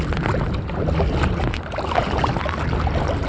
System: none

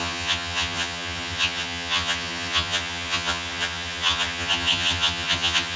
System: vocoder, HiFi-GAN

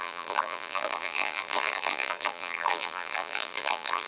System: vocoder, BigVGAN v2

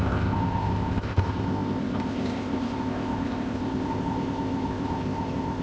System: codec, ZipCodec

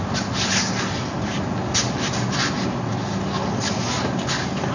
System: none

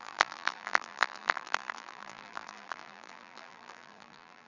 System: vocoder, BigVGAN v2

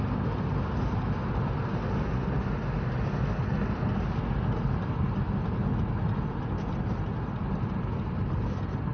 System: none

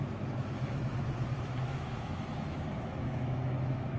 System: autoencoder, DAC-VAE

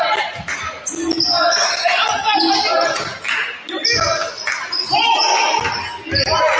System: none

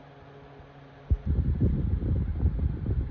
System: none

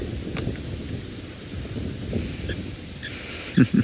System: none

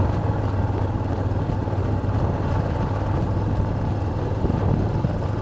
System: none